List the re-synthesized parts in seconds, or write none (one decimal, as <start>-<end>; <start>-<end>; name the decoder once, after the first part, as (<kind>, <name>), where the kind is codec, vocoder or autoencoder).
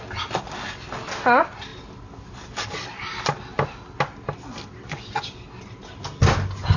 none